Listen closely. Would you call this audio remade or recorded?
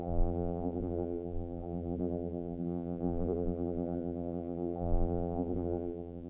remade